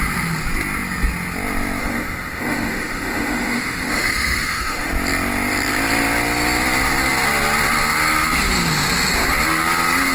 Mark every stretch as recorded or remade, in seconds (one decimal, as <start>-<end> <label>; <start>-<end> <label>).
0.0-1.8 recorded; 1.8-4.9 remade; 4.9-10.1 recorded